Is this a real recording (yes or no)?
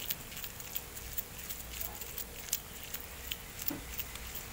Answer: yes